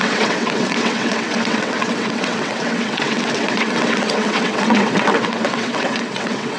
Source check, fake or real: fake